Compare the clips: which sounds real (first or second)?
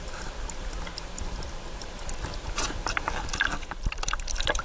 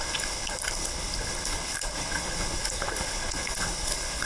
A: first